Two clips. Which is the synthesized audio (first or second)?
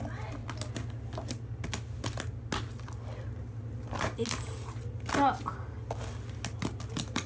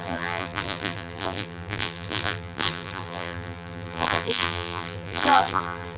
second